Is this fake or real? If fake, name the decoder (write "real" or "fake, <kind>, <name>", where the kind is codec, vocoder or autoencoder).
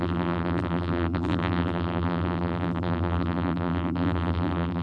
fake, vocoder, BigVGAN v2